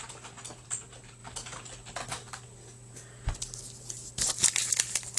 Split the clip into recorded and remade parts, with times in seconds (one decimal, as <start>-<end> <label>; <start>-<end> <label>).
0.0-5.2 recorded